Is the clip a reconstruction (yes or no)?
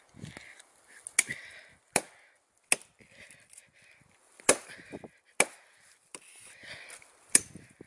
no